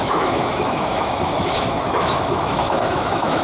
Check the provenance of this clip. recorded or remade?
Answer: remade